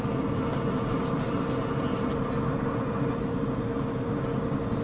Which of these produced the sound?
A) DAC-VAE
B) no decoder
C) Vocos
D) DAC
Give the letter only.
B